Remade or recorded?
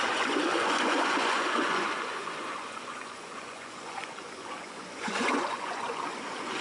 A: remade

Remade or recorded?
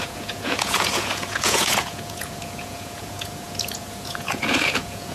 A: remade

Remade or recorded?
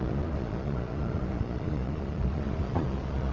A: remade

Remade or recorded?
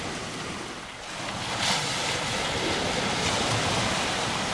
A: recorded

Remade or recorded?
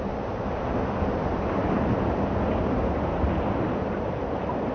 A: recorded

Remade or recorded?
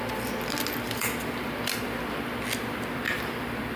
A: recorded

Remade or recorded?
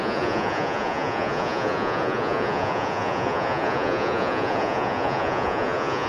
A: remade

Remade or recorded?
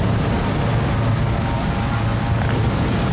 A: recorded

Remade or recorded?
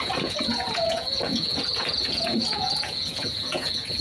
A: remade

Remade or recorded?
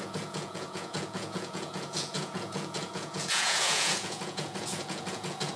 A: remade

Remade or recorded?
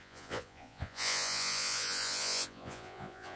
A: remade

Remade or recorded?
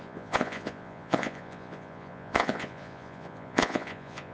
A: remade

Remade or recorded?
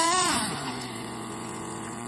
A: remade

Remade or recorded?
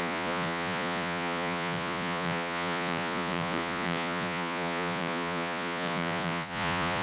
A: remade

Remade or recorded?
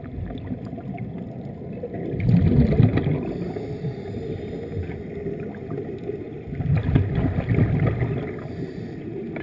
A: recorded